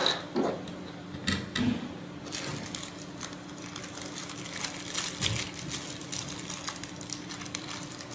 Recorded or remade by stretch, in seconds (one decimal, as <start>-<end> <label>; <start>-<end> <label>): 0.0-8.1 recorded